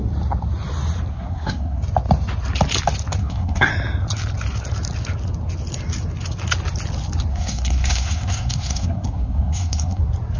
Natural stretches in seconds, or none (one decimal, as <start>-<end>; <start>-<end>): 0.0-1.1; 1.8-3.2; 3.7-7.3; 10.0-10.4